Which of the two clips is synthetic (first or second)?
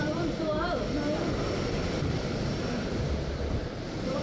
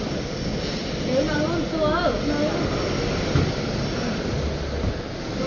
first